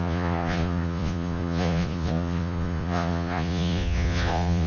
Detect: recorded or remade remade